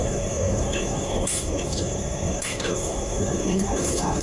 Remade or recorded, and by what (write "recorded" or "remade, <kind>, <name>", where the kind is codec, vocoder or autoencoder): remade, codec, SNAC